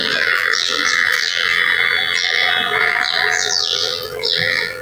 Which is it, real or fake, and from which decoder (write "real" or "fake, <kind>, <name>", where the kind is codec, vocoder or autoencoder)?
fake, vocoder, BigVGAN v2